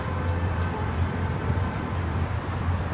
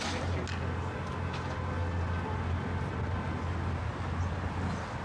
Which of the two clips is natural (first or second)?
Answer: second